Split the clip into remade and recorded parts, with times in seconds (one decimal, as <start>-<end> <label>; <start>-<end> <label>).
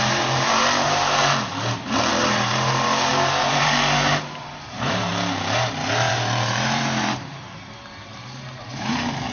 0.0-1.2 remade; 1.2-2.1 recorded; 2.1-5.1 remade; 5.1-6.1 recorded; 6.1-9.3 remade